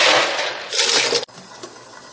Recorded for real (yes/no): yes